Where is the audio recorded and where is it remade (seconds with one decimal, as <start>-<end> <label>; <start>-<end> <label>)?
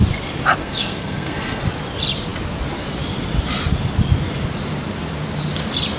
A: 0.0-0.6 recorded; 0.6-1.6 remade; 1.6-6.0 recorded